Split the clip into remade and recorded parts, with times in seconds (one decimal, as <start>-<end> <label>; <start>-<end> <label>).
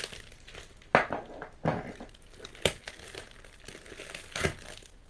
0.0-5.1 recorded